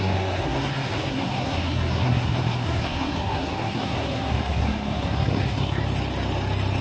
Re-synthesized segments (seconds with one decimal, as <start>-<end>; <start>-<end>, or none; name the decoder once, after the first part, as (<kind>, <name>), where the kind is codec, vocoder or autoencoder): 0.0-5.8 (codec, SNAC)